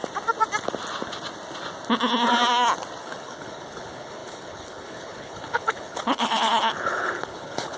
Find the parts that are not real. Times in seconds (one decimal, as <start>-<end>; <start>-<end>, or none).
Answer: 3.0-7.8